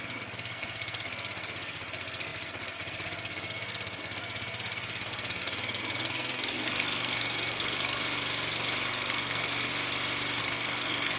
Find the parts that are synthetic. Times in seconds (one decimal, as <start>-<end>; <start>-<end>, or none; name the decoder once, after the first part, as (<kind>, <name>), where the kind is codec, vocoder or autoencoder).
0.0-8.0 (codec, SNAC); 8.8-9.7; 10.4-11.2